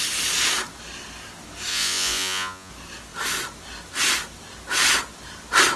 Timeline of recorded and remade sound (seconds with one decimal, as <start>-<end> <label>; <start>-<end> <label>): 0.0-1.7 recorded; 1.7-2.7 remade; 2.7-5.8 recorded